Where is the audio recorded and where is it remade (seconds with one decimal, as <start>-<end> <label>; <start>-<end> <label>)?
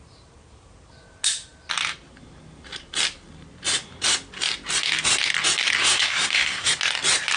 0.0-5.8 recorded; 5.8-6.7 remade; 6.7-7.4 recorded